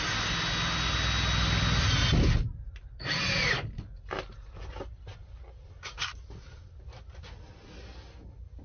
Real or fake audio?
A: real